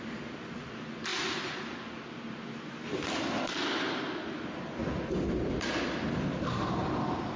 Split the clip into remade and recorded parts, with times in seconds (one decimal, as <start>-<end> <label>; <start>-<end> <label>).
0.0-7.4 recorded